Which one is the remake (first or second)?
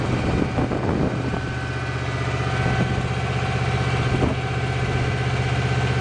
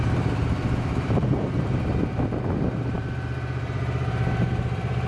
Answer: second